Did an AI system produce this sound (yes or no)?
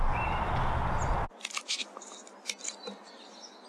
no